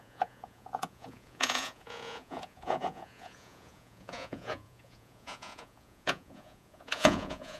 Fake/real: fake